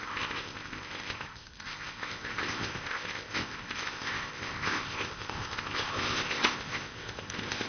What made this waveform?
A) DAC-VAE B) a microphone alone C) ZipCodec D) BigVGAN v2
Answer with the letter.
C